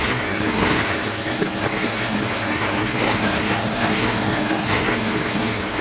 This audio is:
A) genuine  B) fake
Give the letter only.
B